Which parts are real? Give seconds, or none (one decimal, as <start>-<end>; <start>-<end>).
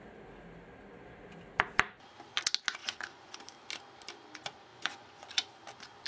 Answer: 0.0-2.8; 3.4-4.7; 5.6-6.1